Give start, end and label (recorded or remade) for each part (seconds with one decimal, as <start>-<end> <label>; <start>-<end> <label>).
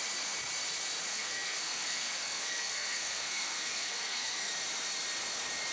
0.0-1.1 recorded; 1.1-4.5 remade; 4.5-5.7 recorded